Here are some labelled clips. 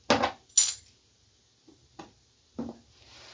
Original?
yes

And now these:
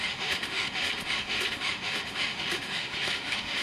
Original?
no